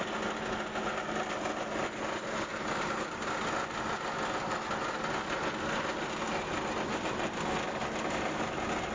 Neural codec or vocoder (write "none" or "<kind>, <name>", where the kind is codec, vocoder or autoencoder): none